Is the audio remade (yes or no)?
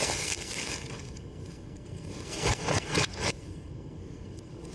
yes